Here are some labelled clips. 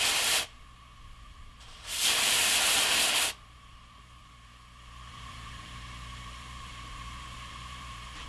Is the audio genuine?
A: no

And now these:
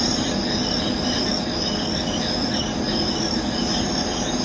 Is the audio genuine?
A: yes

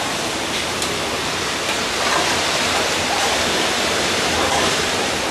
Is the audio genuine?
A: no